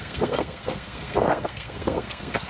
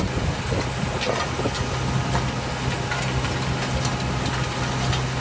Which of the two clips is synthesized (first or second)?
first